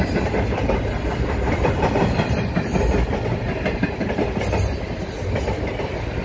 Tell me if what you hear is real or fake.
real